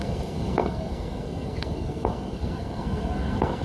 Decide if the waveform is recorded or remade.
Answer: remade